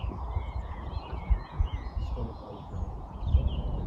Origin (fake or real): fake